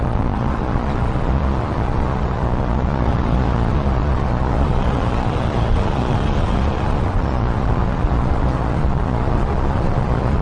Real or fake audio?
fake